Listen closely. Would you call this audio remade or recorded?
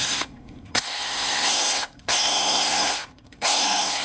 remade